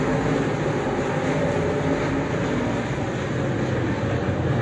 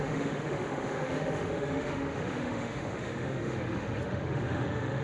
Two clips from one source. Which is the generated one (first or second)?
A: second